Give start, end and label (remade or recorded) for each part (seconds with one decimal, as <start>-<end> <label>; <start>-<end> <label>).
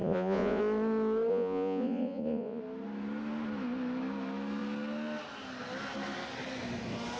0.0-0.6 remade; 0.6-1.3 recorded; 1.3-2.6 remade; 2.6-7.2 recorded